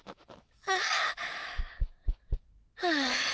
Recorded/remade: remade